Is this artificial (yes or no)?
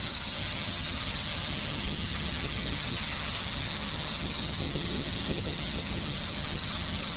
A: yes